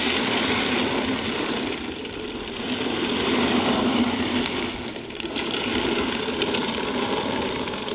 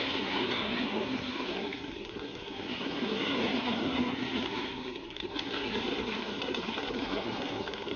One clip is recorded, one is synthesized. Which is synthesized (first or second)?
second